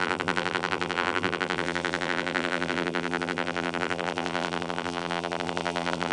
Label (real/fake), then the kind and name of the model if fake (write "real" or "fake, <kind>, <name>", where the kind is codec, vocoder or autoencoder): fake, vocoder, BigVGAN v2